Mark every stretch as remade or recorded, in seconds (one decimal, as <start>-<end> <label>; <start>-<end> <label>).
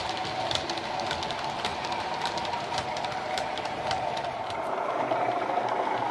0.0-1.7 recorded; 1.7-5.4 remade; 5.4-6.1 recorded